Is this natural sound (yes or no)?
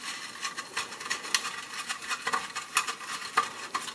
yes